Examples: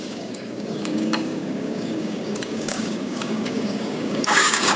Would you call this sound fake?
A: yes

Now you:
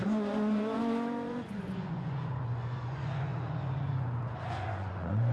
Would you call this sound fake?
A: yes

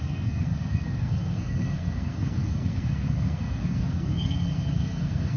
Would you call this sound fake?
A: yes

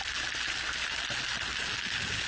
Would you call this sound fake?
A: no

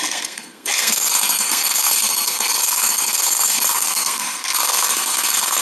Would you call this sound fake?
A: yes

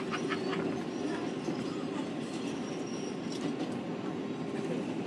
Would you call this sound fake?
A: no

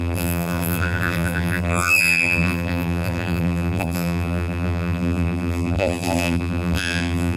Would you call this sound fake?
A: yes